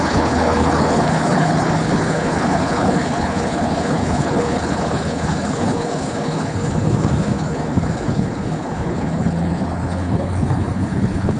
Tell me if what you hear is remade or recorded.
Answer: remade